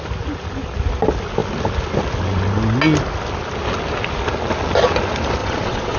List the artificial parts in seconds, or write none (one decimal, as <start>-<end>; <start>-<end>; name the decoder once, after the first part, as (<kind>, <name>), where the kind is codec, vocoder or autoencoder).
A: 5.4-6.0 (vocoder, Vocos)